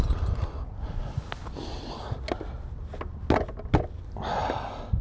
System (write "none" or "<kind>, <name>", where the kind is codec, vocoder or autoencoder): none